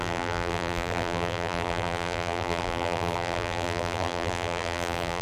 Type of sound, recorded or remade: remade